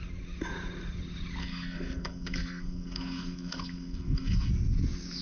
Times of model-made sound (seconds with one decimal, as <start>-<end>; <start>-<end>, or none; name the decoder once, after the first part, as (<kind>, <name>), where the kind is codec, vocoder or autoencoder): 1.4-4.5 (codec, SNAC)